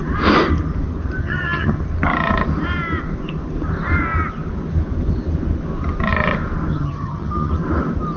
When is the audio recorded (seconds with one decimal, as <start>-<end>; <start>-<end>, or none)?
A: 0.0-1.2; 1.8-6.7; 7.5-8.2